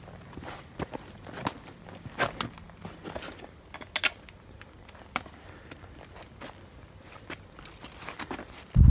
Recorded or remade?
recorded